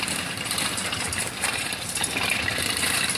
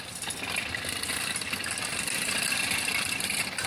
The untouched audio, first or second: second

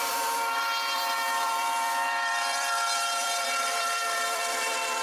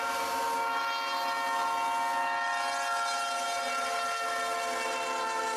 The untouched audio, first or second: second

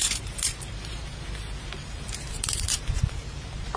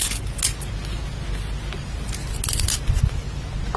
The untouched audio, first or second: second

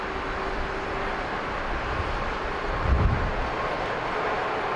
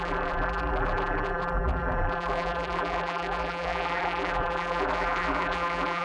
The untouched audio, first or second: first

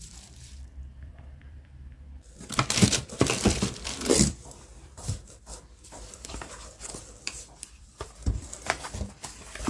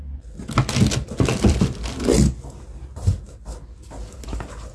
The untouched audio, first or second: second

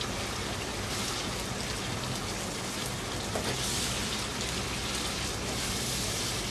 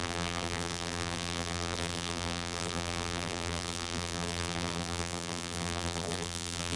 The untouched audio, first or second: first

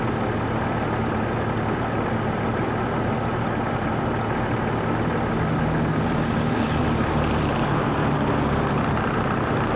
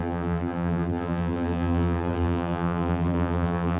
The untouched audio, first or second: first